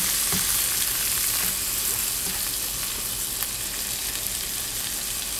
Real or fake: real